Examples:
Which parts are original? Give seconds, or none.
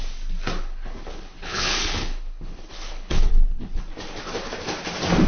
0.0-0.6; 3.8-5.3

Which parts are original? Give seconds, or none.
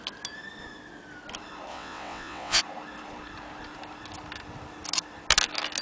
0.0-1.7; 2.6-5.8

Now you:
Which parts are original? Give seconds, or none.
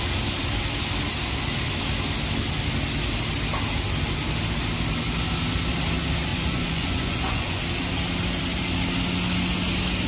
0.0-6.3; 7.6-10.1